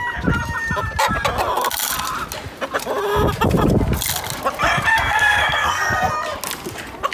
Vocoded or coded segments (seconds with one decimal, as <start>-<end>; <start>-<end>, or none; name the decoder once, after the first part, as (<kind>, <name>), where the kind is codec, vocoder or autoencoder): 4.9-6.1 (codec, SNAC)